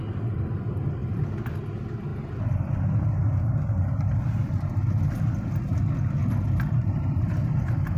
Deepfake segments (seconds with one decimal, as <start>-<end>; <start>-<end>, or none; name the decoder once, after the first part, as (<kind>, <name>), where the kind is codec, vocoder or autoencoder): 1.0-1.5 (vocoder, BigVGAN v2); 2.1-2.7; 6.2-8.0